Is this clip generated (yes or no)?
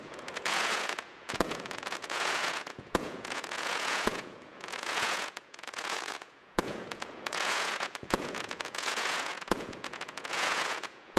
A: yes